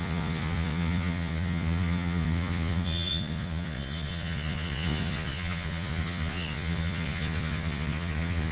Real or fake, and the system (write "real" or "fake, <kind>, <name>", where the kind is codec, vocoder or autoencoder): fake, vocoder, Vocos